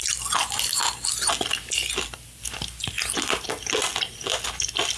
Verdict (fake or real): real